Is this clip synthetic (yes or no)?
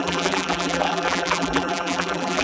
yes